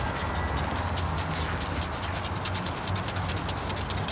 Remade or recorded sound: recorded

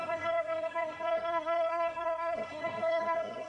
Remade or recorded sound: remade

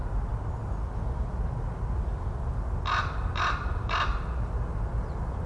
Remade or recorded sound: recorded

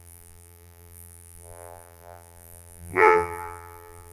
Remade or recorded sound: remade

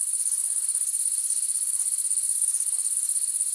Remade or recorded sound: recorded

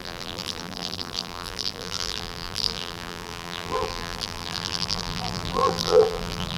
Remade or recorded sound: remade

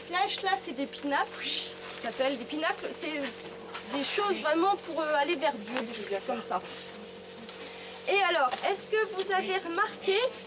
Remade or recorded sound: recorded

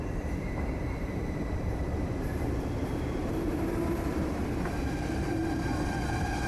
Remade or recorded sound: remade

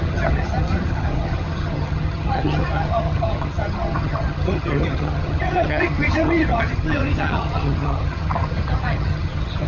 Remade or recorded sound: remade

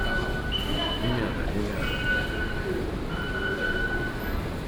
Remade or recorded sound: recorded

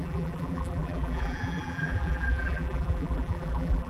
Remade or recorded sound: remade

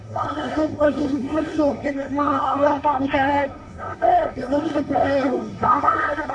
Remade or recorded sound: remade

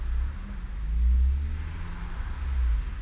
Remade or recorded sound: recorded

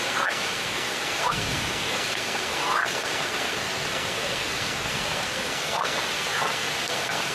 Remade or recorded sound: remade